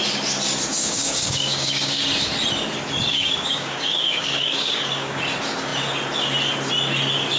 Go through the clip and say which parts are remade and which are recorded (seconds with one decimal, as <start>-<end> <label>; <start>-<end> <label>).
0.0-0.7 recorded; 0.7-2.0 remade; 2.0-3.1 recorded; 3.1-5.2 remade; 5.2-7.4 recorded